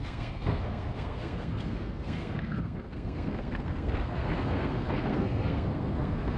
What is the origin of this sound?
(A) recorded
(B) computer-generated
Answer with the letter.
B